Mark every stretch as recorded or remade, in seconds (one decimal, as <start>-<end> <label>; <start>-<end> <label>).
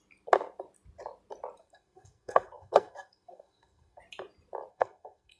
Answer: 0.0-1.6 recorded; 1.6-4.0 remade; 4.0-4.7 recorded; 4.7-5.4 remade